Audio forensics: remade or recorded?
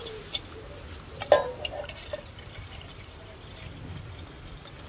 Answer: recorded